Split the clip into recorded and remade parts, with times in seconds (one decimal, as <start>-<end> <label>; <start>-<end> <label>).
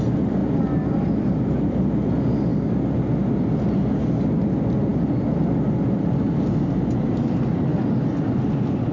0.0-8.9 recorded